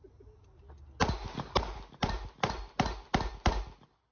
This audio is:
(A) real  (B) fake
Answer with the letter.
A